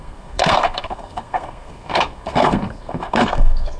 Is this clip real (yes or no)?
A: no